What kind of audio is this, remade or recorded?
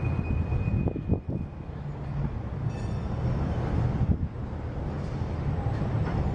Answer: recorded